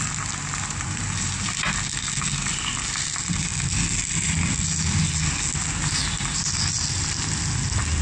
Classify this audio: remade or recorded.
recorded